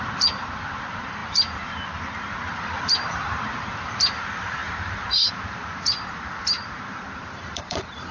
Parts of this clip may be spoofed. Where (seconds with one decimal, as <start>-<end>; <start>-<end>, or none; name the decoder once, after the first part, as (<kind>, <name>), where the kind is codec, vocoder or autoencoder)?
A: 0.0-8.1 (vocoder, BigVGAN v2)

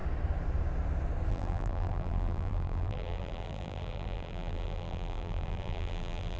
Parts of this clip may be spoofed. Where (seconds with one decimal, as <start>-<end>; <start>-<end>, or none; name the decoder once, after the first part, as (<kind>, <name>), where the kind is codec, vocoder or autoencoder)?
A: 1.3-6.4 (vocoder, BigVGAN v2)

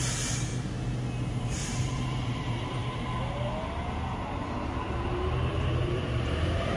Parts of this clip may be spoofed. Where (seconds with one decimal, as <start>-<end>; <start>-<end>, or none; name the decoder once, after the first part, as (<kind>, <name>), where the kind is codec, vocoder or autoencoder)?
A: 0.0-0.5 (vocoder, BigVGAN v2); 1.3-2.8; 5.5-6.8